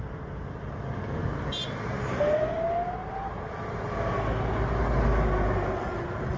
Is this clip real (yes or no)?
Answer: yes